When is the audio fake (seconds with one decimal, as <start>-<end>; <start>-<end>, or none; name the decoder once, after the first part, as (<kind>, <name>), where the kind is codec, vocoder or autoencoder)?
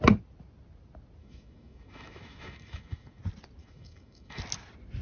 1.2-3.2 (autoencoder, DAC-VAE); 3.6-4.4